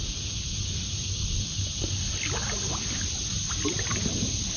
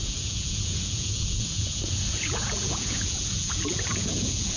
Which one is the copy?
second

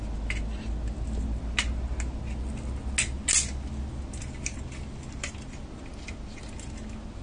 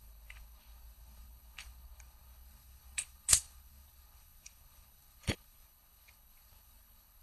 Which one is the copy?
second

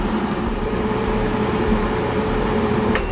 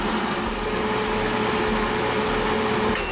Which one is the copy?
first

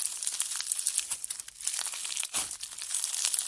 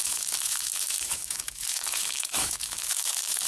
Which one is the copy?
second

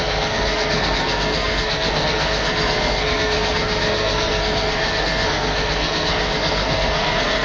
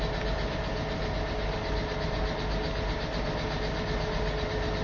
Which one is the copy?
first